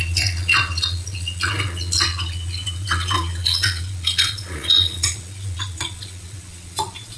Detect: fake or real fake